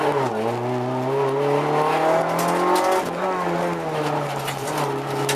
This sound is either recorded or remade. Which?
recorded